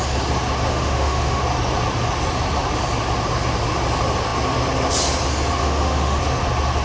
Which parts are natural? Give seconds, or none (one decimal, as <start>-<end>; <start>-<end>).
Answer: 0.0-0.7; 1.4-5.6; 6.2-6.8

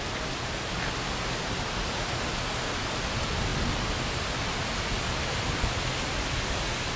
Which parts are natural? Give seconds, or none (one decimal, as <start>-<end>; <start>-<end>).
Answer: 0.0-7.0

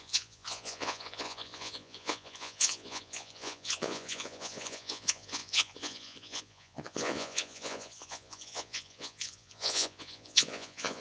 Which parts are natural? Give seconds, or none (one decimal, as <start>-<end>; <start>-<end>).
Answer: none

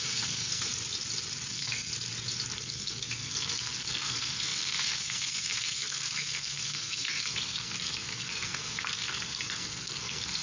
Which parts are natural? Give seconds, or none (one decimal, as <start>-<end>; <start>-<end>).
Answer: 0.7-1.5; 1.9-2.6